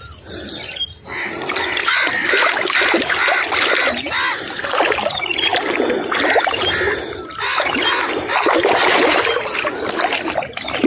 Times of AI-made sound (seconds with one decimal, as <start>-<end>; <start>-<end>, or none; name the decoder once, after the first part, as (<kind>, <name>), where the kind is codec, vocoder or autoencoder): none